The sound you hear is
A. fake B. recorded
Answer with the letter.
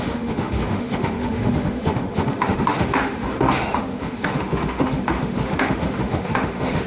A